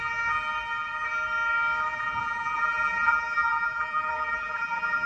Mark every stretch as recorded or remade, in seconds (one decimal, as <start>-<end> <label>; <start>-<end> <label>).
0.0-1.9 recorded; 1.9-5.1 remade